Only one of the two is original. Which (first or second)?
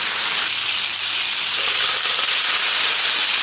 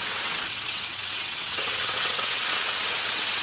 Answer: first